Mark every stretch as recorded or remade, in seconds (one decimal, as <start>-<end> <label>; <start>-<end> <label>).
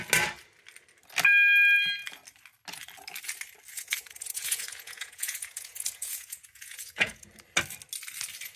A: 0.0-3.7 recorded; 3.7-7.3 remade; 7.3-8.6 recorded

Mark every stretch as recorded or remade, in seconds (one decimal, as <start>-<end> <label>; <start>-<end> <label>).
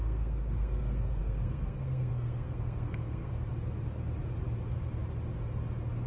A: 0.0-3.3 remade; 3.3-6.1 recorded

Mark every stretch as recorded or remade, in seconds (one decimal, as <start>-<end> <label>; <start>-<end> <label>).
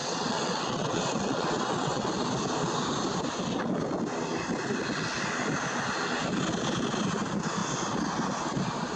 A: 0.0-2.1 remade; 2.1-9.0 recorded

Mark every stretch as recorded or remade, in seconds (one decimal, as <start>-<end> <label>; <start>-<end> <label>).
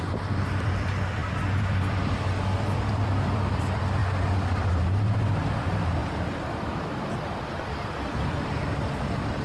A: 0.0-4.0 remade; 4.0-5.4 recorded; 5.4-9.4 remade